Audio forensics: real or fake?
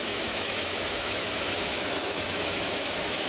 fake